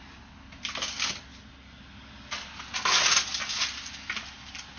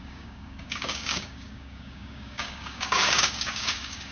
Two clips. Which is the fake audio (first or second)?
second